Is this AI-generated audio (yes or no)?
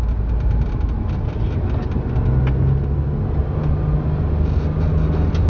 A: no